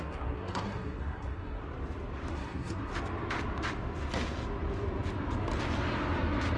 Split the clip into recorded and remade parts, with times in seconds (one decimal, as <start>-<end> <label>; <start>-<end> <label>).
0.0-1.6 remade; 1.6-2.3 recorded; 2.3-2.9 remade; 2.9-6.6 recorded